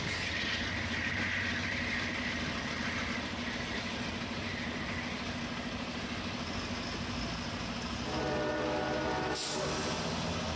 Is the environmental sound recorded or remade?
recorded